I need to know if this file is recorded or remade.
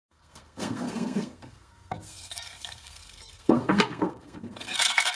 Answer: remade